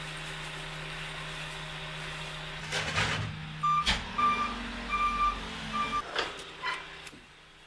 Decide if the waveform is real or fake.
real